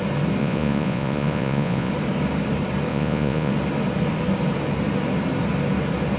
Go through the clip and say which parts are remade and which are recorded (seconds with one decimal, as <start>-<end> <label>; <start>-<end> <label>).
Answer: 0.0-0.4 recorded; 0.4-1.9 remade; 1.9-2.9 recorded; 2.9-3.5 remade; 3.5-6.2 recorded